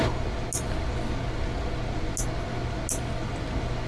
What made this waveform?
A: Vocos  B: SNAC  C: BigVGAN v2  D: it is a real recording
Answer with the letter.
D